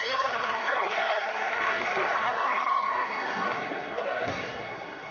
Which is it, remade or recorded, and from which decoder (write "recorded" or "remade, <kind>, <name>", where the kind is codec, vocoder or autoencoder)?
remade, codec, SNAC